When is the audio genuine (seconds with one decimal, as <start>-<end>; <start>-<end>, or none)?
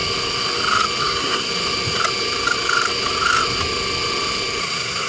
0.0-1.0; 1.5-4.6